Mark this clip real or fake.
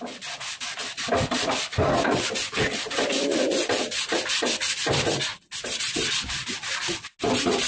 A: real